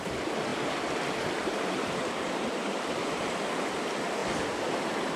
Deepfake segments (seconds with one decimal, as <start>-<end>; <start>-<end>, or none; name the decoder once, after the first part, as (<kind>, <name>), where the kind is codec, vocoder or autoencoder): 0.0-0.5 (vocoder, BigVGAN v2); 2.0-5.2